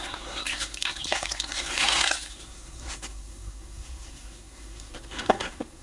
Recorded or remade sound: remade